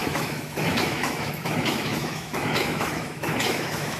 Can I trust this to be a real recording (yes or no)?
no